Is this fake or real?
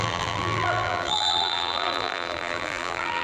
fake